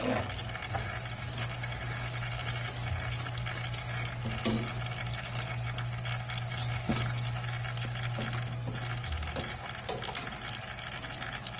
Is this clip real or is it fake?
real